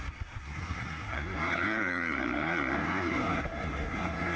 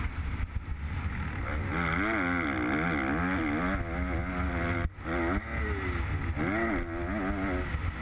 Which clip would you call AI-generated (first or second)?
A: first